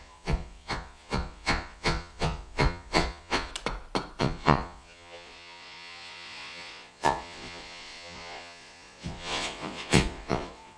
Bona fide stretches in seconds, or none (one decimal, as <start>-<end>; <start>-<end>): 3.5-4.2